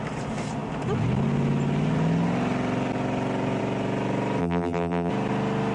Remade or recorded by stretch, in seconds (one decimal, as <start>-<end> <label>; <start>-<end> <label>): 0.0-4.4 recorded; 4.4-5.1 remade; 5.1-5.7 recorded

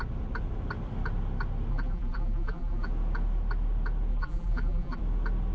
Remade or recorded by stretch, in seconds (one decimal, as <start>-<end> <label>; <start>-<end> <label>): 0.0-1.7 recorded; 1.7-2.9 remade; 2.9-4.1 recorded; 4.1-5.0 remade; 5.0-5.5 recorded

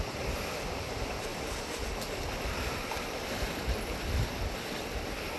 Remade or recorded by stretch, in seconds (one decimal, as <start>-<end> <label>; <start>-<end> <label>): 0.0-1.3 recorded; 1.3-4.5 remade; 4.5-5.4 recorded

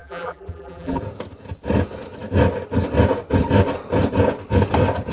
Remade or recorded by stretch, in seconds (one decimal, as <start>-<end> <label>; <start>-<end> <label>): 0.0-1.0 remade; 1.0-5.1 recorded

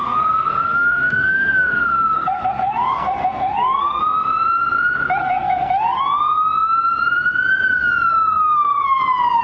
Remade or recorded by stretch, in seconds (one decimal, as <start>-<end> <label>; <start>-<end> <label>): 0.0-4.0 remade; 4.0-5.2 recorded; 5.2-6.0 remade; 6.0-8.1 recorded; 8.1-9.0 remade; 9.0-9.4 recorded

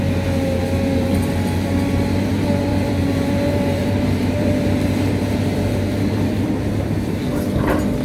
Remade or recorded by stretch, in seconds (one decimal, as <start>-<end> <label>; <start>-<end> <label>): 0.0-2.7 recorded; 2.7-7.4 remade; 7.4-8.0 recorded

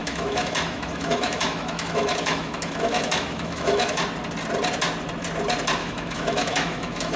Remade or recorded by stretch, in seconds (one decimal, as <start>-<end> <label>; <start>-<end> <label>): 0.0-4.0 remade; 4.0-5.8 recorded; 5.8-7.2 remade